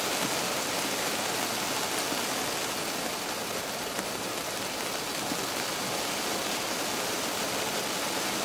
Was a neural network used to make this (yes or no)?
no